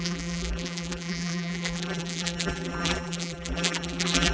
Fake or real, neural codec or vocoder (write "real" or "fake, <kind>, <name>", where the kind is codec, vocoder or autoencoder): fake, vocoder, BigVGAN v2